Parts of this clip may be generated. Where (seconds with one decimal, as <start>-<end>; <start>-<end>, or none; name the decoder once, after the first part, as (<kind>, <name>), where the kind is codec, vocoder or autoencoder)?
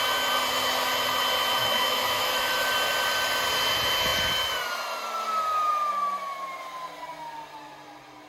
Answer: 1.6-2.7 (autoencoder, DAC-VAE)